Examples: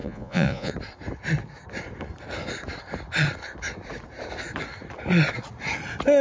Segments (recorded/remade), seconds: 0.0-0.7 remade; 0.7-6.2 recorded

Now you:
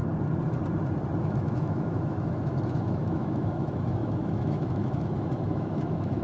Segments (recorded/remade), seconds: 0.0-1.2 recorded; 1.2-6.2 remade

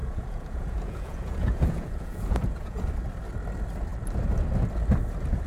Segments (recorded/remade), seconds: 0.0-2.9 remade; 2.9-5.5 recorded

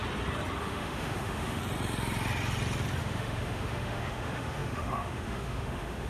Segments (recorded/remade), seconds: 0.0-0.6 recorded; 0.6-1.6 remade; 1.6-3.0 recorded; 3.0-6.1 remade

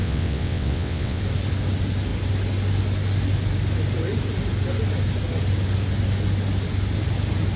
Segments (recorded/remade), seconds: 0.0-1.2 remade; 1.2-7.6 recorded

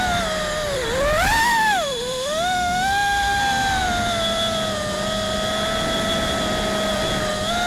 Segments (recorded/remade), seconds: 0.0-1.4 recorded; 1.4-3.4 remade; 3.4-7.7 recorded

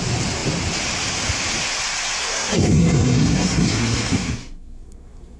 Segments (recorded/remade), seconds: 0.0-2.2 recorded; 2.2-5.4 remade